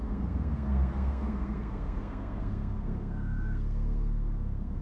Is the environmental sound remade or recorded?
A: remade